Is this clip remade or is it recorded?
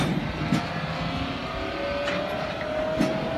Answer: recorded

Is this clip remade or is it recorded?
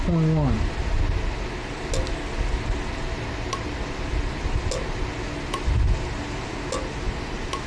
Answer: recorded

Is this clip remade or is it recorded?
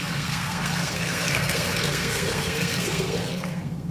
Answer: remade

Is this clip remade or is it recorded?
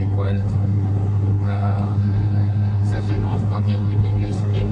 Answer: remade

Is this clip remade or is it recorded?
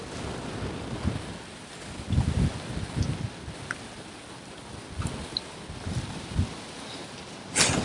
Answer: recorded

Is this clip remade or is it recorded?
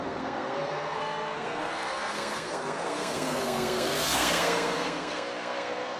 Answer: remade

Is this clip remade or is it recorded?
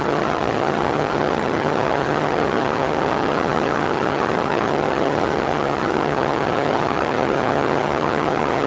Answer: remade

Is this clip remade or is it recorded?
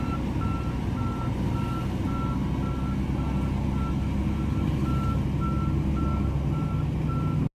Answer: recorded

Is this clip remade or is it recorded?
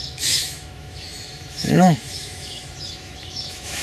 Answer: remade